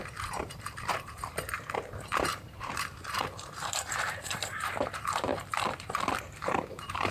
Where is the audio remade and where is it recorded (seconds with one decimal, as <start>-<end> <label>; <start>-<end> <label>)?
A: 0.0-5.3 remade; 5.3-6.2 recorded; 6.2-7.1 remade